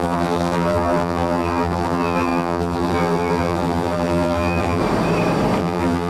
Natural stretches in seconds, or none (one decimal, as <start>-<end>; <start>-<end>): 4.8-5.6